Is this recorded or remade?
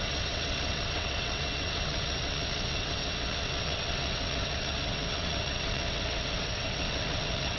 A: remade